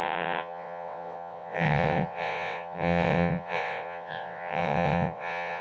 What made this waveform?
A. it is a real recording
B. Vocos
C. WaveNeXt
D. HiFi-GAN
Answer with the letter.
C